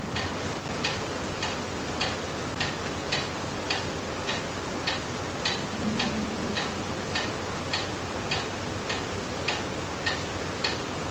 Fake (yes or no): no